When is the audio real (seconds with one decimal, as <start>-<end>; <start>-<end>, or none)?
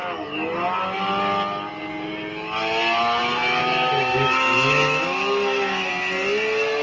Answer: 0.0-3.6; 5.9-6.8